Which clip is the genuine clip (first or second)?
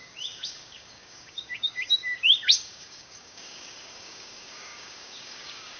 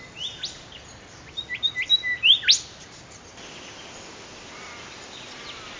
second